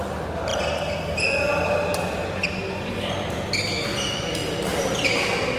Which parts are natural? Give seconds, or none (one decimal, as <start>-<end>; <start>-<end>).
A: 0.0-5.6